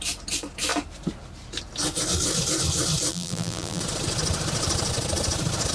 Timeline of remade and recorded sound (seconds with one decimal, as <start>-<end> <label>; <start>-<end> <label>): 0.0-3.1 recorded; 3.1-3.8 remade; 3.8-5.7 recorded